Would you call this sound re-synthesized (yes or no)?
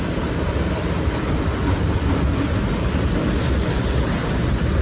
yes